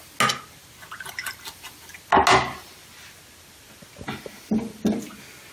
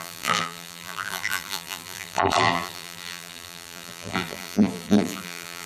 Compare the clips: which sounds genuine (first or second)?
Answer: first